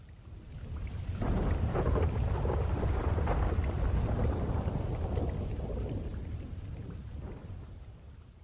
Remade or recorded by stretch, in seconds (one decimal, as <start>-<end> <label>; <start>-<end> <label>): 0.0-8.4 recorded